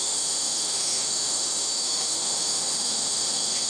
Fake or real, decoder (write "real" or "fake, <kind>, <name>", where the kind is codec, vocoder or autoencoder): fake, autoencoder, DAC-VAE